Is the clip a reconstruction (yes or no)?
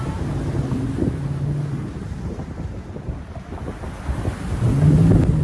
no